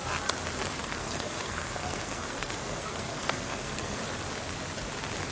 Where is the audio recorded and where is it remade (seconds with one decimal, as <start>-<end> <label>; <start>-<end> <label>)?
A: 0.0-0.8 recorded; 0.8-4.0 remade; 4.0-5.3 recorded